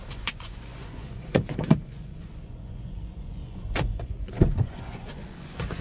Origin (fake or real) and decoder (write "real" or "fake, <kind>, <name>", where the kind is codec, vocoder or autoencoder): fake, vocoder, Vocos